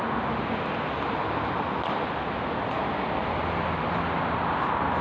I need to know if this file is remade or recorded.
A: recorded